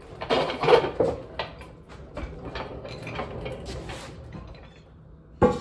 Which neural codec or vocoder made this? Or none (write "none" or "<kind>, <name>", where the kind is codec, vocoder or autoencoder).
none